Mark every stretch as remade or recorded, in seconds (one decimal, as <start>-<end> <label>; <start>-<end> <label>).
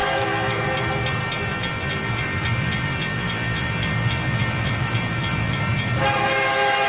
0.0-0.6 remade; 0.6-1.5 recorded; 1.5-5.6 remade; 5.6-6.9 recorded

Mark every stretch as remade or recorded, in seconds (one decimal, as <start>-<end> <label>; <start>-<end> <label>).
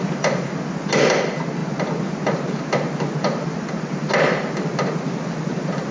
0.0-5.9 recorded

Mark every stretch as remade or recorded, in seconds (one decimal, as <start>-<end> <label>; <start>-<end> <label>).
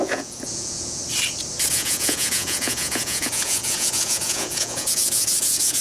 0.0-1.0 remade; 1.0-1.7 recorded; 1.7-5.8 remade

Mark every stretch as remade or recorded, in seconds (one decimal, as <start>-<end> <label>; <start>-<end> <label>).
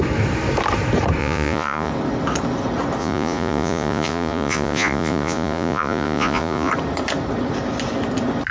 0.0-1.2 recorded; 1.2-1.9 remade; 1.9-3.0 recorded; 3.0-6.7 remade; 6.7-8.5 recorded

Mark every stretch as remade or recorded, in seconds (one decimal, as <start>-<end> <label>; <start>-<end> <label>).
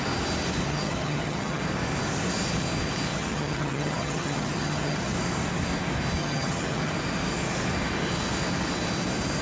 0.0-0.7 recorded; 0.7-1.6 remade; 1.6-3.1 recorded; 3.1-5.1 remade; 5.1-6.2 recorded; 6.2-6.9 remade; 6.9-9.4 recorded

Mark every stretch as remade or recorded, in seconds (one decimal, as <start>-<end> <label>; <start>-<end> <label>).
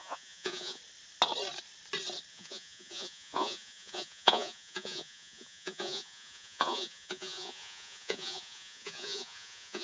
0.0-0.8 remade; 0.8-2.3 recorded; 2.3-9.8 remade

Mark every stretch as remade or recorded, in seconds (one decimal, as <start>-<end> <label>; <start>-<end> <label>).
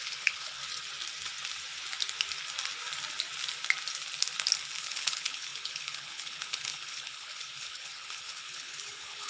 0.0-0.6 remade; 0.6-4.8 recorded; 4.8-9.3 remade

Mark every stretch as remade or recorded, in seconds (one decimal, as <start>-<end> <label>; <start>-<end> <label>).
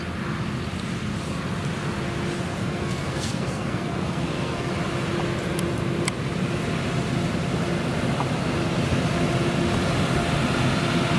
0.0-2.6 recorded; 2.6-4.7 remade; 4.7-11.2 recorded